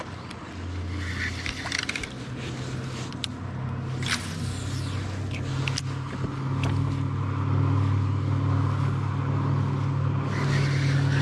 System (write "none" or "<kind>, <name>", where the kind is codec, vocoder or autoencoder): none